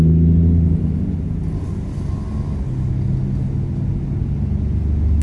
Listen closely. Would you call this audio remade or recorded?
recorded